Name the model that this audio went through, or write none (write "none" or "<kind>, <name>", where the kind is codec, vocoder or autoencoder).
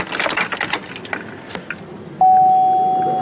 none